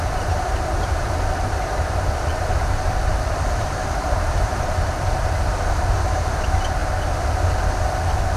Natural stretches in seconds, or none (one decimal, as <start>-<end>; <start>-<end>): 6.8-7.9

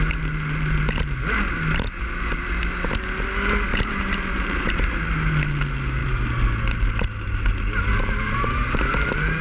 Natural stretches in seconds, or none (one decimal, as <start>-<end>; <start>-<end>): 0.0-3.7; 4.6-6.0; 7.4-8.0